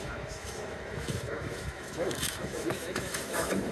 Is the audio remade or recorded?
remade